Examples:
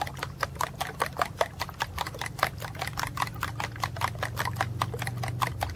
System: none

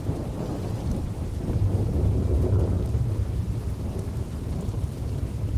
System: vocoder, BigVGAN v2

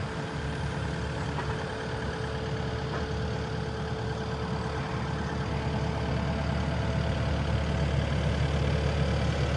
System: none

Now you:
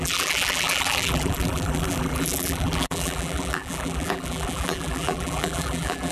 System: vocoder, BigVGAN v2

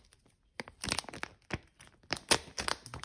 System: none